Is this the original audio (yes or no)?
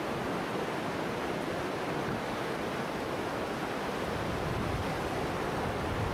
yes